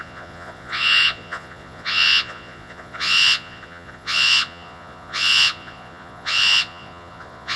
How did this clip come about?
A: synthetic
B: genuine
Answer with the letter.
A